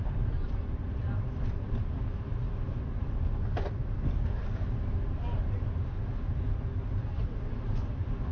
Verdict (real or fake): real